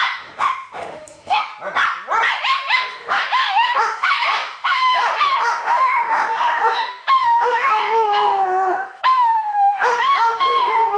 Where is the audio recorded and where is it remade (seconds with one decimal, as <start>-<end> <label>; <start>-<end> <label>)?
0.0-1.5 remade; 1.5-2.3 recorded; 2.3-11.0 remade